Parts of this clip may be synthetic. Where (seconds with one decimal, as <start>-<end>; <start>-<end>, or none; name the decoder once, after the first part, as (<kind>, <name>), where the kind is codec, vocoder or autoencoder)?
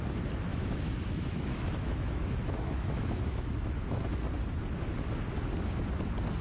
0.5-4.3 (autoencoder, DAC-VAE)